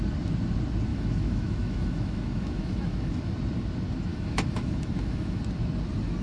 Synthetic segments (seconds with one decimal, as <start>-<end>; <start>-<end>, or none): 0.9-3.3; 4.1-5.4